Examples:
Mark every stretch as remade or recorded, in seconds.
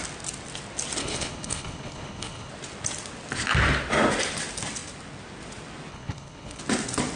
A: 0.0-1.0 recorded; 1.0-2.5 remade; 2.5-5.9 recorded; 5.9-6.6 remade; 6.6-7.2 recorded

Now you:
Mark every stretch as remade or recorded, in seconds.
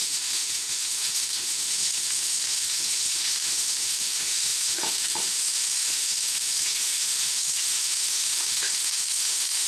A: 0.0-9.7 remade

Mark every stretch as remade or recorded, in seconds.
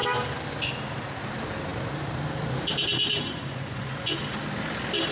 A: 0.0-3.1 recorded; 3.1-4.2 remade; 4.2-5.1 recorded